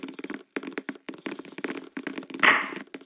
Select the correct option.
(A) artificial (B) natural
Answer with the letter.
B